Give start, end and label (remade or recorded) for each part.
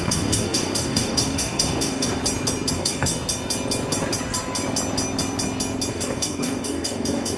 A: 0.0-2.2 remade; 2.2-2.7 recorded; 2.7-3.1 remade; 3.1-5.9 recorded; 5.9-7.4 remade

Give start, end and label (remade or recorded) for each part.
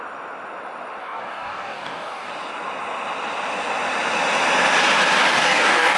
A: 0.0-1.0 recorded; 1.0-2.3 remade; 2.3-5.3 recorded; 5.3-6.0 remade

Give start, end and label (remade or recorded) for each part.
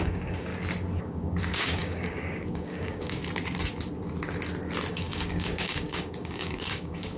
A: 0.0-0.5 remade; 0.5-1.0 recorded; 1.0-3.2 remade; 3.2-4.9 recorded; 4.9-7.2 remade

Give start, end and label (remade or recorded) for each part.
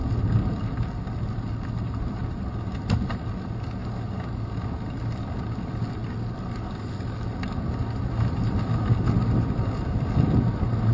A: 0.0-10.9 recorded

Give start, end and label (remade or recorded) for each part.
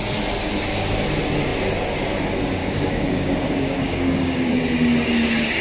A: 0.0-2.6 recorded; 2.6-4.5 remade; 4.5-5.6 recorded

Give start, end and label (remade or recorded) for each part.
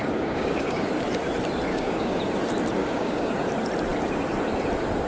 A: 0.0-0.9 remade; 0.9-1.7 recorded; 1.7-2.2 remade; 2.2-2.8 recorded; 2.8-3.3 remade; 3.3-5.1 recorded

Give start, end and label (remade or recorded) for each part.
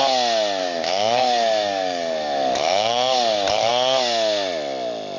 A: 0.0-0.6 recorded; 0.6-3.7 remade; 3.7-5.2 recorded